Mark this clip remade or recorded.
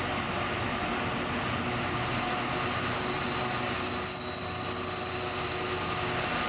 recorded